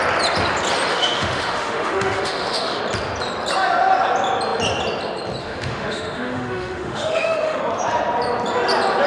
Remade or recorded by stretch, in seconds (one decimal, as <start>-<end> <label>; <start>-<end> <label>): 0.0-0.9 recorded; 0.9-2.8 remade; 2.8-5.4 recorded; 5.4-7.6 remade; 7.6-9.1 recorded